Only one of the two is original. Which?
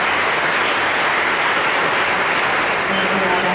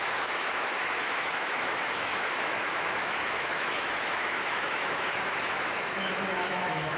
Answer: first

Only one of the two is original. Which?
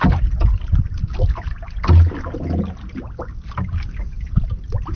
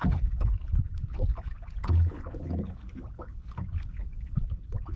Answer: first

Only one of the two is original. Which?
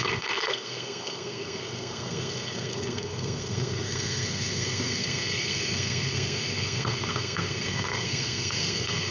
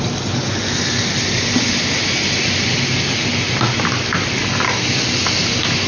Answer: second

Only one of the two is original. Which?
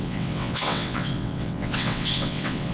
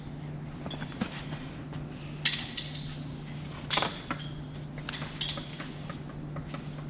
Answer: second